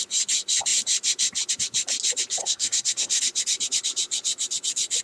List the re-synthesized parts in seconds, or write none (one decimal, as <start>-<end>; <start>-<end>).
2.4-3.2